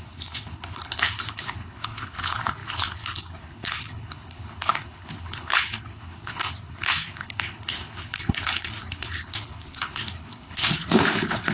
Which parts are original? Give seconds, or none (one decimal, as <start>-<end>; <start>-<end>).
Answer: none